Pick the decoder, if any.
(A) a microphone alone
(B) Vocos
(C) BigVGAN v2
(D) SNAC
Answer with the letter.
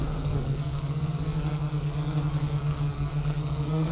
D